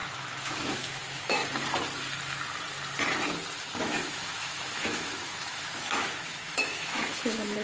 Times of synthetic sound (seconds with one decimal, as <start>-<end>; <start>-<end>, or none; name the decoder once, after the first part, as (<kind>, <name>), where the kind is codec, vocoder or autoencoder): 0.0-1.4 (autoencoder, DAC-VAE); 3.8-7.6